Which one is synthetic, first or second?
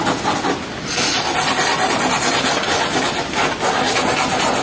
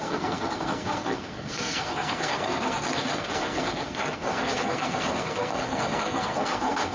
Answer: second